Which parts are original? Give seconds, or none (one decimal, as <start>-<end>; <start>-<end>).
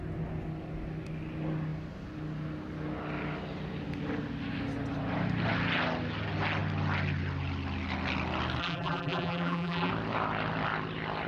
0.0-8.6; 9.9-11.3